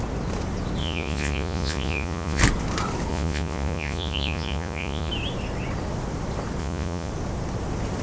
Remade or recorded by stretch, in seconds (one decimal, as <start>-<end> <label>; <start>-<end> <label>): 0.0-0.8 recorded; 0.8-2.4 remade; 2.4-3.1 recorded; 3.1-5.1 remade; 5.1-6.6 recorded; 6.6-7.1 remade; 7.1-8.0 recorded